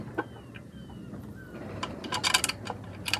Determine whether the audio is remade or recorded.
recorded